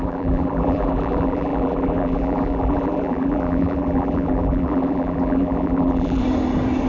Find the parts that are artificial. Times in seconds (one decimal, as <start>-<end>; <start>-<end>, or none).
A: 0.0-6.2